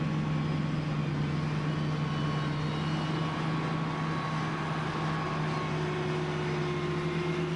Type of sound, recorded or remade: recorded